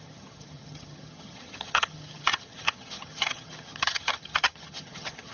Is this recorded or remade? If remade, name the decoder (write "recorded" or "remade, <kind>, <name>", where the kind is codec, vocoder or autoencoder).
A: remade, vocoder, HiFi-GAN